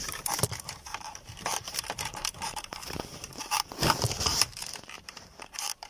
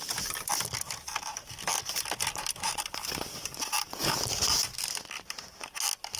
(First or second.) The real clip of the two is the second